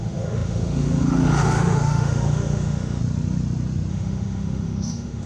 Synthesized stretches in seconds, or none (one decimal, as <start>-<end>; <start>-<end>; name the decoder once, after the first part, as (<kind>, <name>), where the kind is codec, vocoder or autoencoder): 0.0-3.0 (autoencoder, DAC-VAE); 3.9-5.3